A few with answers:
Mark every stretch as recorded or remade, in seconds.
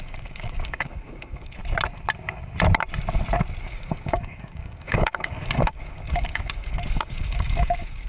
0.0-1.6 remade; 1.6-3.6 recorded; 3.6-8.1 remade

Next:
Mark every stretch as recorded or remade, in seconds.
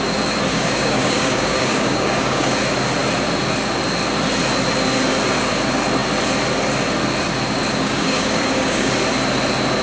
0.0-0.5 recorded; 0.5-2.5 remade; 2.5-7.7 recorded; 7.7-8.9 remade; 8.9-9.8 recorded